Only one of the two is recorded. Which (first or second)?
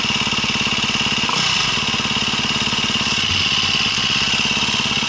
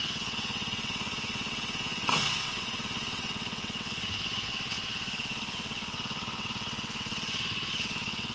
first